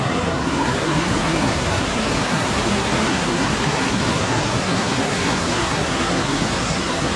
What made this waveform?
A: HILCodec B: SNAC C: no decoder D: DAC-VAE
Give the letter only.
B